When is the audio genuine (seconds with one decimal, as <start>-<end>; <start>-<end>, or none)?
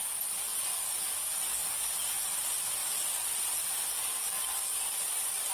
0.0-5.5